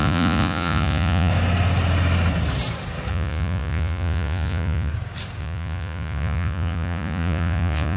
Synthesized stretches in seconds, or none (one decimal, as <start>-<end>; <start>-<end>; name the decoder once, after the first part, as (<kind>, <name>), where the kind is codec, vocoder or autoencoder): 0.0-1.3 (vocoder, Vocos); 3.1-4.9; 5.4-8.0